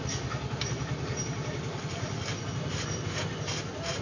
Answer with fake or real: real